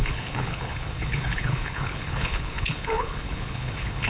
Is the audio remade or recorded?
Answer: remade